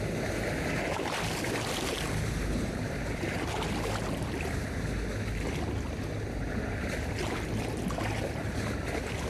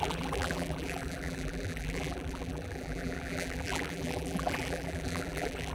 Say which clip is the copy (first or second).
second